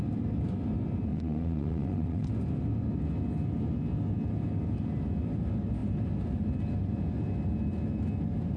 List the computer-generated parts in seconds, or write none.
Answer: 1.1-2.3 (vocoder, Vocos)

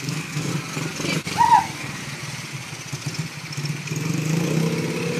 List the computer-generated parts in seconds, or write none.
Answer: 0.0-0.5 (codec, SNAC); 1.6-2.0

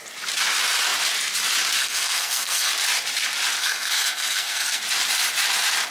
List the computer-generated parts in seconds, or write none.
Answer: 1.8-2.7 (codec, SNAC); 3.6-4.8

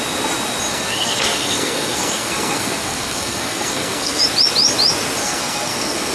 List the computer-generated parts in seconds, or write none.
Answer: 0.7-4.2 (codec, SNAC); 5.2-6.1

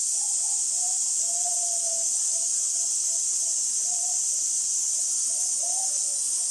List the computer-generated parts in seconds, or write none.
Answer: none